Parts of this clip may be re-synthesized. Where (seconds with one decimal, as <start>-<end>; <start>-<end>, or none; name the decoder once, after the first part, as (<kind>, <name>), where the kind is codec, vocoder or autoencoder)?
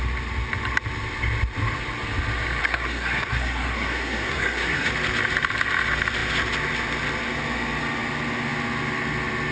2.6-4.9 (codec, SNAC)